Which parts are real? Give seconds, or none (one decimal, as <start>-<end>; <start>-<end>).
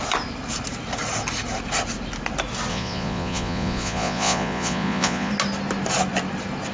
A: 0.0-2.7; 5.3-6.7